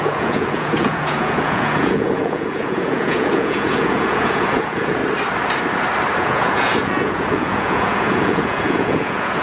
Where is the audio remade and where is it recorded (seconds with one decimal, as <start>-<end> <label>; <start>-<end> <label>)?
0.0-5.0 remade; 5.0-6.2 recorded; 6.2-9.4 remade